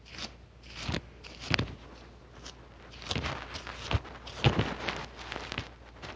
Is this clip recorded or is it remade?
recorded